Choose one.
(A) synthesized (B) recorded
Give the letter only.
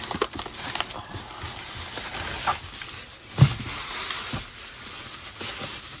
B